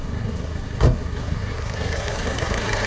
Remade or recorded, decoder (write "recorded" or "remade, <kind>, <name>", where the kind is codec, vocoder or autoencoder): remade, codec, SNAC